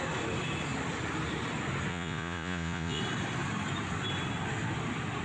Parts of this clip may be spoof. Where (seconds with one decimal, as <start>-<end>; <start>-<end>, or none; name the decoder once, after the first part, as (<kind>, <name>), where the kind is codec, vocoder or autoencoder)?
1.9-3.0 (vocoder, Vocos)